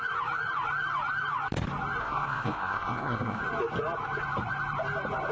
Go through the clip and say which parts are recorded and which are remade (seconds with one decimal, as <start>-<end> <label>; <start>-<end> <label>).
0.0-2.0 recorded; 2.0-3.4 remade; 3.4-5.3 recorded